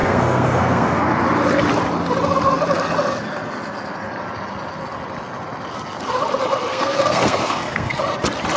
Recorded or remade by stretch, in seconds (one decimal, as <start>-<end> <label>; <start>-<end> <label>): 0.0-1.1 remade; 1.1-6.7 recorded; 6.7-8.0 remade; 8.0-8.6 recorded